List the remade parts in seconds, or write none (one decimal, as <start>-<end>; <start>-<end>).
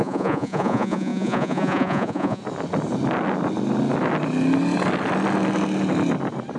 0.0-2.4